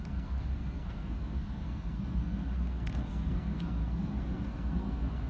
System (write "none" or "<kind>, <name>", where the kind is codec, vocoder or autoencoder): codec, SNAC